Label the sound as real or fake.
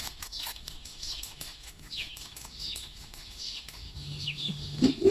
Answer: fake